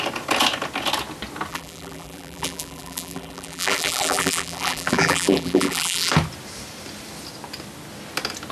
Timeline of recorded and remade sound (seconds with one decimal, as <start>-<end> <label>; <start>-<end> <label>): 0.0-1.5 recorded; 1.5-6.1 remade; 6.1-8.5 recorded